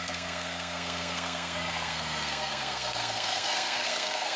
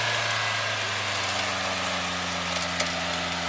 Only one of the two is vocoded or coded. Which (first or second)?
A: first